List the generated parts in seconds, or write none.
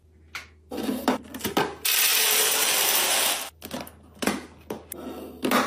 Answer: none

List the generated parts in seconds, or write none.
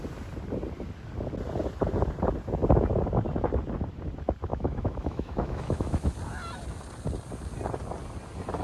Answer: 4.5-6.1 (autoencoder, DAC-VAE)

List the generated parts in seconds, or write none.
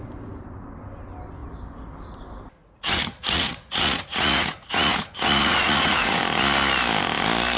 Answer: 2.6-6.2 (vocoder, Vocos)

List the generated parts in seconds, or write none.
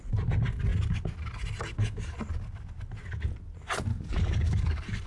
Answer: 3.9-5.1 (codec, DAC)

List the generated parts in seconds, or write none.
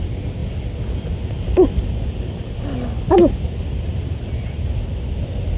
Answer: none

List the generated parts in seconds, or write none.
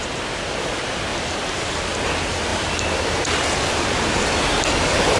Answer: none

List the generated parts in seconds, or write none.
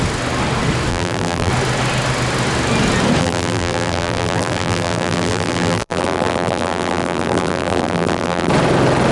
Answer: 0.9-1.5 (vocoder, BigVGAN v2); 3.2-8.5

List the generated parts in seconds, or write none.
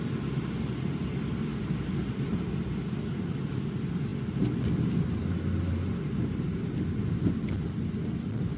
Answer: none